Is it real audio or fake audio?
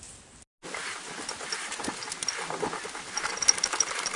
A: real